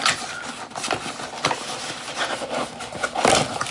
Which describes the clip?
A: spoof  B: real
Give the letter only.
B